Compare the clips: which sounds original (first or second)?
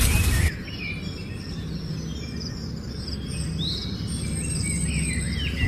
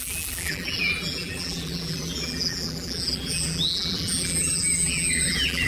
first